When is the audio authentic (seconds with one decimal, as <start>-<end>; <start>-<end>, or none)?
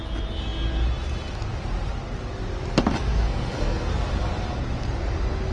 0.0-3.1; 3.9-5.5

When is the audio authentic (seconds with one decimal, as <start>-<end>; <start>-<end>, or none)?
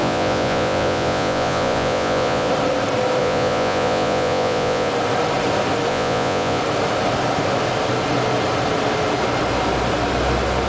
2.5-3.2; 4.9-5.9; 6.6-10.7